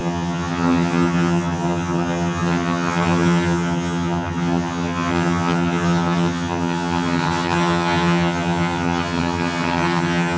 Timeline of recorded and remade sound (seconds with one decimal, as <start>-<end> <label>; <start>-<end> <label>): 0.0-10.4 remade